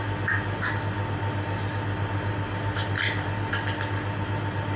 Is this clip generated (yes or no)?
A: no